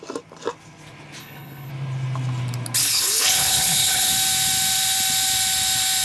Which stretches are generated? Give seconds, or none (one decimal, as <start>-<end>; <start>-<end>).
1.2-1.7; 2.8-4.1